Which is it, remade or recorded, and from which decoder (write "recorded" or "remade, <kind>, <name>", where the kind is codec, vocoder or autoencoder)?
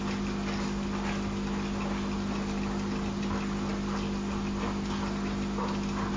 recorded